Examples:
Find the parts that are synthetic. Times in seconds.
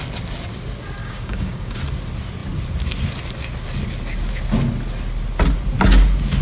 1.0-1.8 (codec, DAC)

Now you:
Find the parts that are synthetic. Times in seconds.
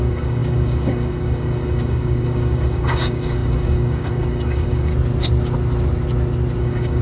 0.0-4.9 (codec, DAC); 6.6-7.0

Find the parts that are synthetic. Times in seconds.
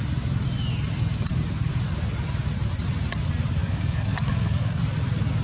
3.6-4.8 (codec, DAC)